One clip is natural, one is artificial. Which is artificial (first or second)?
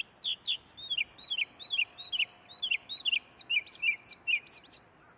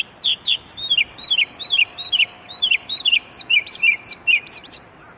second